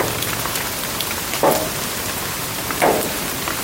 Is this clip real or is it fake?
real